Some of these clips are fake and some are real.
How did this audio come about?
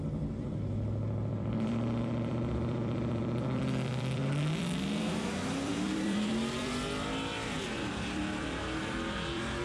fake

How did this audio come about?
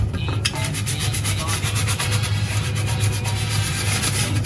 real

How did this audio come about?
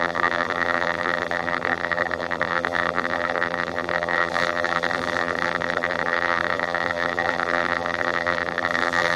fake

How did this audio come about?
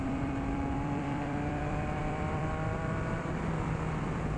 fake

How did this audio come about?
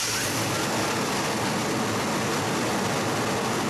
real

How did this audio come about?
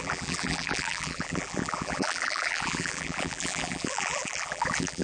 fake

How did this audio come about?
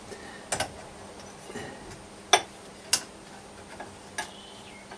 real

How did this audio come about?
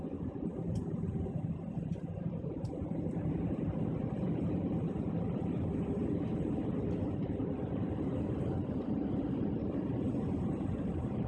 fake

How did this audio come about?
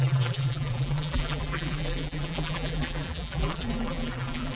fake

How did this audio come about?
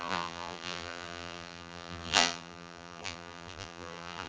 fake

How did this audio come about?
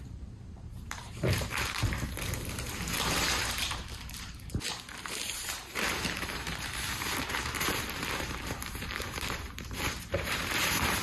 fake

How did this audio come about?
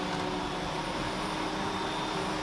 real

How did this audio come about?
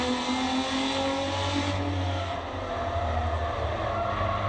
real